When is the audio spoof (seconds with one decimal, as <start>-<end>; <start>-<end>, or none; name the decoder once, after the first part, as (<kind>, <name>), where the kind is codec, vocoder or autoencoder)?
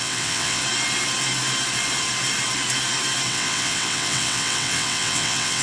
0.0-0.6 (vocoder, WaveNeXt); 3.3-5.6